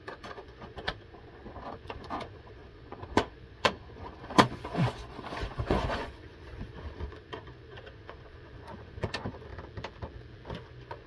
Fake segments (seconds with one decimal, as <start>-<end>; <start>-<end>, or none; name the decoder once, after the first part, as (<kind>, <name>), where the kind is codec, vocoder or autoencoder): 0.0-9.5 (vocoder, Vocos); 10.7-11.1

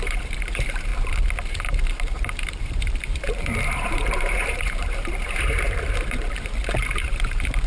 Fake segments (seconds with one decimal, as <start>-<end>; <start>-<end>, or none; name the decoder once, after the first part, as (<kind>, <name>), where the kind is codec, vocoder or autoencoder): 0.0-0.9 (vocoder, BigVGAN v2); 1.5-7.7

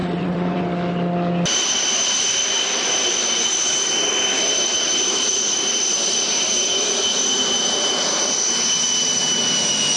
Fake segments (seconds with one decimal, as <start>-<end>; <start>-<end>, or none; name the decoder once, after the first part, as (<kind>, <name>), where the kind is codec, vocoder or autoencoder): 0.0-0.6 (vocoder, Vocos)

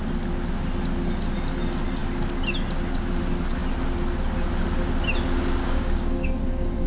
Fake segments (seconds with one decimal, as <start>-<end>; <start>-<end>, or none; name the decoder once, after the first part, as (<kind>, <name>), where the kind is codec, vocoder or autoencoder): 5.6-6.9 (codec, DAC)